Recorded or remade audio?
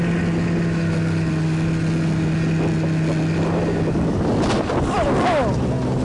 recorded